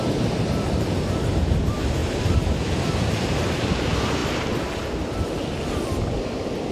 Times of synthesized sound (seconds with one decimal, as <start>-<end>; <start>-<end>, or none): 0.0-2.0; 3.2-4.2